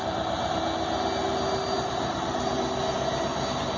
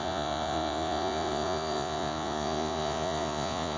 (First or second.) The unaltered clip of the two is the first